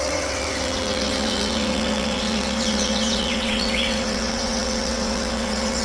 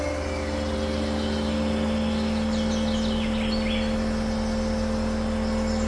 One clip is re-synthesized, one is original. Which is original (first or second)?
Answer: second